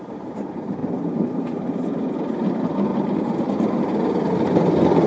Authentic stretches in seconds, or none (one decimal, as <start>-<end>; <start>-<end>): 0.0-2.9; 3.9-5.1